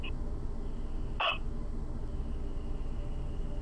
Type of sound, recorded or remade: recorded